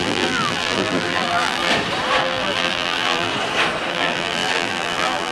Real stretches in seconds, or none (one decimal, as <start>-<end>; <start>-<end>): 1.7-2.2; 3.3-3.9